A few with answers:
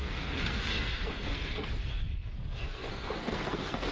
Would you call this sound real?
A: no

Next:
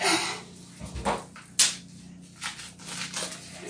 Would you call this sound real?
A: yes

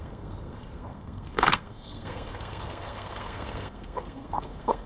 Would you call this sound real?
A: no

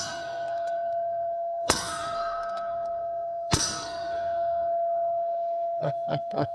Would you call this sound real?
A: no